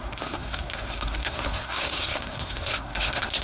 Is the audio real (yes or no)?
no